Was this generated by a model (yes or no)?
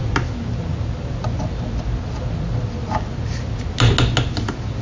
no